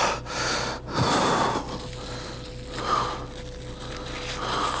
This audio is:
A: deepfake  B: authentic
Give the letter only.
B